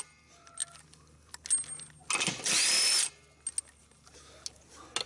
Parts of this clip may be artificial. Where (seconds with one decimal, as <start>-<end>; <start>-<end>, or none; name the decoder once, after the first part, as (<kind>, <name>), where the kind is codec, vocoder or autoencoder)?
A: none